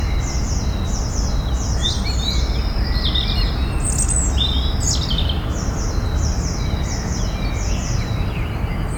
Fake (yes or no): no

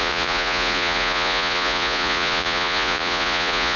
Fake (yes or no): yes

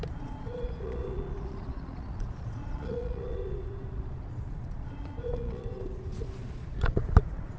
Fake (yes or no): yes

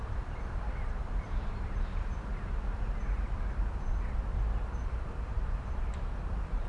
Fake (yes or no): yes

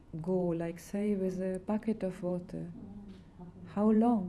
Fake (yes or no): yes